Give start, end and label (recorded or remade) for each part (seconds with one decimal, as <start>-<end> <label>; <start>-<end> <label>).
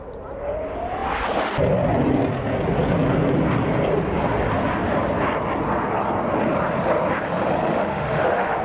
0.0-7.6 recorded; 7.6-8.6 remade